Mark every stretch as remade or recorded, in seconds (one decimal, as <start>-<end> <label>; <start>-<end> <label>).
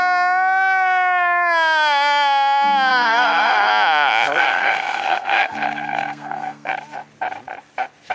0.0-2.9 recorded; 2.9-3.7 remade; 3.7-4.4 recorded; 4.4-6.7 remade; 6.7-8.1 recorded